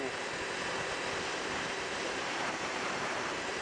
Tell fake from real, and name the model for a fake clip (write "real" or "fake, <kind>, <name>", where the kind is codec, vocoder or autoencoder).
fake, vocoder, BigVGAN v2